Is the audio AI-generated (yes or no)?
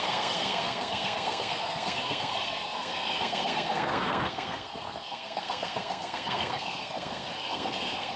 yes